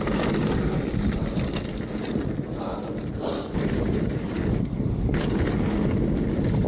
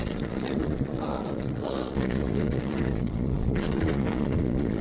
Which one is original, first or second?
first